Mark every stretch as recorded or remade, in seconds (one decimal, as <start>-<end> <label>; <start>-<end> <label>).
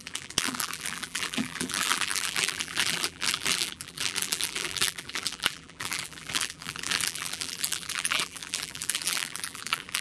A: 0.0-10.0 remade